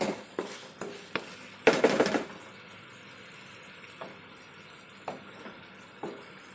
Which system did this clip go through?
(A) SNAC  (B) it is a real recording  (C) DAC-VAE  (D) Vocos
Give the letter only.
B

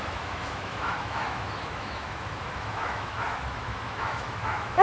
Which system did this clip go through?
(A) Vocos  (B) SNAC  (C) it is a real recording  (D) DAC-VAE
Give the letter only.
D